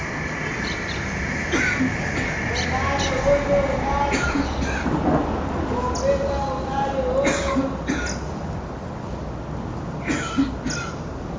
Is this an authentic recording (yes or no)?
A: yes